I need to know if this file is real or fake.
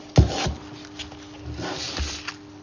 real